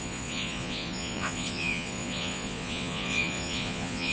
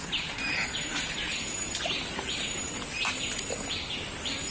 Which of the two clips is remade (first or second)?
first